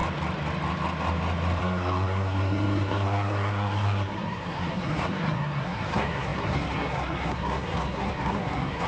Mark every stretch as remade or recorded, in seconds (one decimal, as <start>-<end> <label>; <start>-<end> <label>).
0.0-1.6 recorded; 1.6-8.9 remade